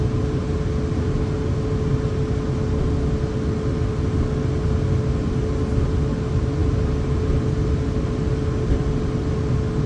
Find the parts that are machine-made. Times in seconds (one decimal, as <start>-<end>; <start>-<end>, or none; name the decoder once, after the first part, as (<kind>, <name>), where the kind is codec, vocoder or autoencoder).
none